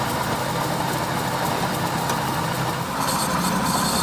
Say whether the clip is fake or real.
real